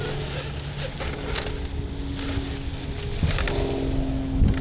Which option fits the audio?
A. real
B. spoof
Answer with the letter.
A